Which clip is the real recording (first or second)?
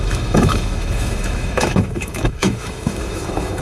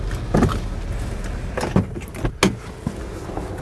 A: second